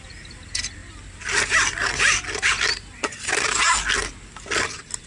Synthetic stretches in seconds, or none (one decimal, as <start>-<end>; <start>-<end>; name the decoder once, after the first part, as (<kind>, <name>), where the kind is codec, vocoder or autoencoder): none